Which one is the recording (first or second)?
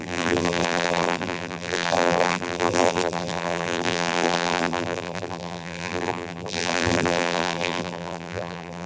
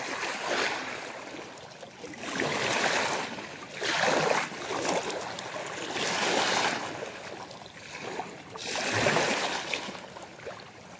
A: second